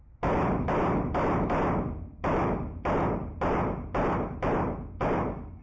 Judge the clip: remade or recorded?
recorded